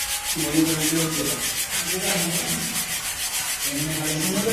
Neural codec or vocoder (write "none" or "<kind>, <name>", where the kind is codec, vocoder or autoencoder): none